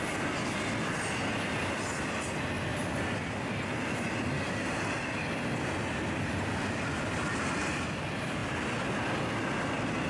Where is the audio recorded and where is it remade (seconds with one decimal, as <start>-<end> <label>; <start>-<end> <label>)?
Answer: 0.0-10.1 recorded